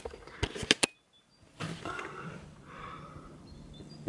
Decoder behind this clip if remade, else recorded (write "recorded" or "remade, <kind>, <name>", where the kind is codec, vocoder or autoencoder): recorded